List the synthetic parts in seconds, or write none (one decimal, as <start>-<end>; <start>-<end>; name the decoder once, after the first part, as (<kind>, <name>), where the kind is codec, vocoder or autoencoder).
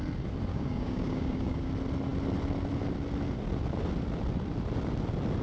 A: 0.5-1.7 (codec, DAC)